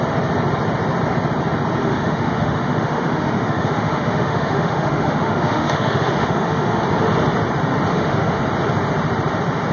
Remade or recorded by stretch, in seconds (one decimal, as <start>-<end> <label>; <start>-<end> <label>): 0.0-1.8 recorded; 1.8-6.8 remade; 6.8-7.9 recorded; 7.9-8.4 remade; 8.4-9.7 recorded

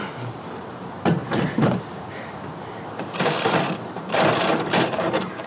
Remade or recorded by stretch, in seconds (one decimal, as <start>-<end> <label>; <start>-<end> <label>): 0.0-5.5 remade

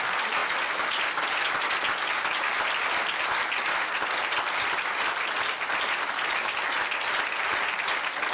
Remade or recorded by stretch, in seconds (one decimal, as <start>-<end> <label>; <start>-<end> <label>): 0.0-8.3 recorded

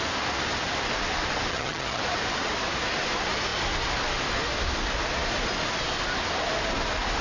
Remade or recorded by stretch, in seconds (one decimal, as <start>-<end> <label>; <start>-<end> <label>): 0.0-1.5 recorded; 1.5-2.0 remade; 2.0-7.2 recorded

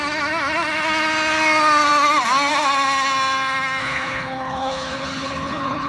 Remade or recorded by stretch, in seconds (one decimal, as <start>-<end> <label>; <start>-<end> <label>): 0.0-3.8 recorded; 3.8-5.9 remade

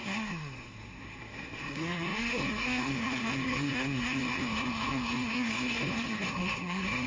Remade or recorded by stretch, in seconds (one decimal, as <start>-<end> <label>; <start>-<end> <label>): 0.0-7.1 remade

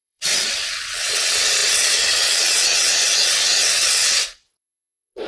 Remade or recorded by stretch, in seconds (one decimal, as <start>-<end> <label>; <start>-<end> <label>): 0.0-5.3 remade

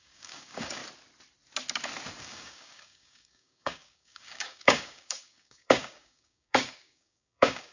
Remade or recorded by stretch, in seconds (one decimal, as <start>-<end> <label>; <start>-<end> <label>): 0.0-0.8 remade; 0.8-2.2 recorded; 2.2-7.7 remade